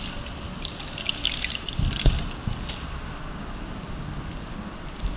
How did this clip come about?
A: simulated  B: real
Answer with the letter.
B